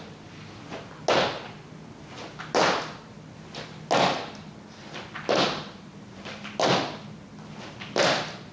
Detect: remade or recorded recorded